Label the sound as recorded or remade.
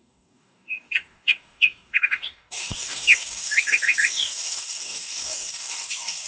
remade